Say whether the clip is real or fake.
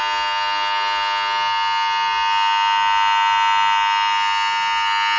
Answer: real